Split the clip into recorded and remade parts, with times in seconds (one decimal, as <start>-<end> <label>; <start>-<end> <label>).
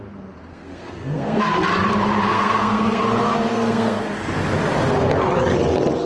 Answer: 0.0-0.5 recorded; 0.5-1.4 remade; 1.4-2.3 recorded; 2.3-3.0 remade; 3.0-3.5 recorded; 3.5-4.0 remade; 4.0-6.1 recorded